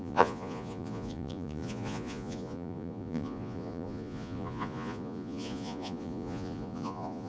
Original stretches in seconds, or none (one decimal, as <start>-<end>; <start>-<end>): none